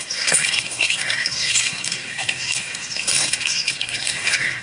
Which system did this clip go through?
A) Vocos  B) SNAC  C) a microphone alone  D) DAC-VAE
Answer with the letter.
B